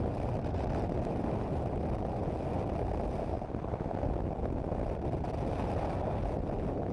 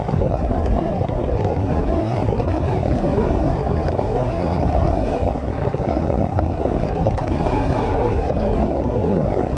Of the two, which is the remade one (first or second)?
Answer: second